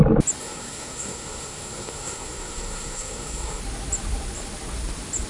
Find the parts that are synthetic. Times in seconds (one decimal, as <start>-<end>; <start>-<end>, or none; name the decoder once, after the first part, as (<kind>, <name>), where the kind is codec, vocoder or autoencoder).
0.4-3.6 (codec, SNAC)